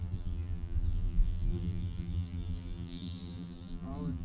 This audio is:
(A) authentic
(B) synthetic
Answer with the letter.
B